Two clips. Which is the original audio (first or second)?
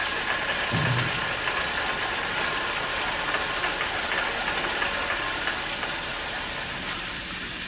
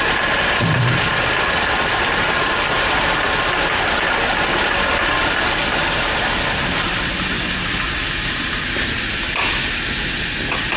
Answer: first